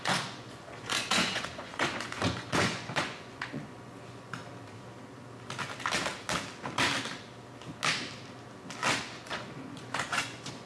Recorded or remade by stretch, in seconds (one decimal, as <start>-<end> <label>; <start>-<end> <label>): 0.0-4.4 remade; 4.4-8.9 recorded; 8.9-10.7 remade

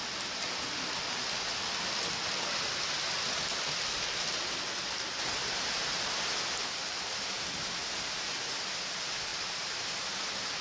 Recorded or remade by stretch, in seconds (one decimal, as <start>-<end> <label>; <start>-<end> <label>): 0.0-0.6 remade; 0.6-7.8 recorded; 7.8-8.3 remade; 8.3-10.6 recorded